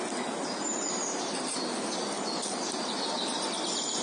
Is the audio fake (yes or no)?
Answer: no